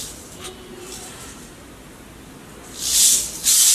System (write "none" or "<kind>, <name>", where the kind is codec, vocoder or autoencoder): none